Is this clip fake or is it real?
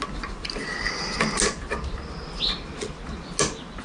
real